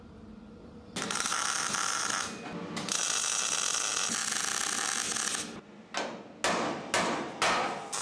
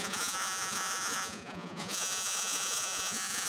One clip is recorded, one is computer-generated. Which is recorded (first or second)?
first